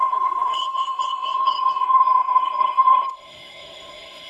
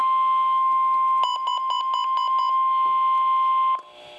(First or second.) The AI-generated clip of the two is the first